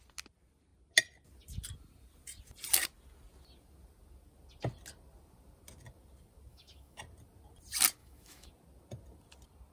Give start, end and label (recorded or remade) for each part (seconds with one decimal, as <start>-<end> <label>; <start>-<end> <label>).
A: 0.0-6.5 recorded; 6.5-7.0 remade; 7.0-8.0 recorded; 8.0-8.5 remade; 8.5-9.7 recorded